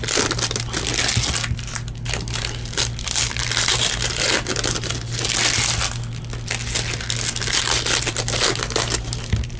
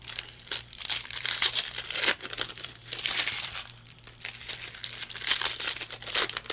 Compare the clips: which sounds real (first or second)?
first